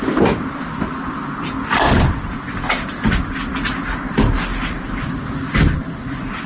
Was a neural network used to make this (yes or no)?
no